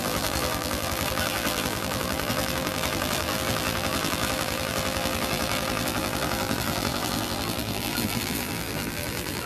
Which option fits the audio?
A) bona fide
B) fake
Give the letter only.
B